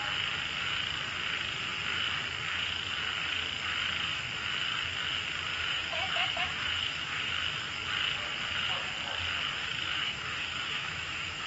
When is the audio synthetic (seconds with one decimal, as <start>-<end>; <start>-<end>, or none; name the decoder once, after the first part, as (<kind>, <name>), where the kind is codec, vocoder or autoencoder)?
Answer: 5.5-7.3 (autoencoder, DAC-VAE); 9.6-11.5